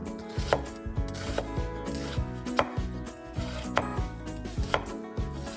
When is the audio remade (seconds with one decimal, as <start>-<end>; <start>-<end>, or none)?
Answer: none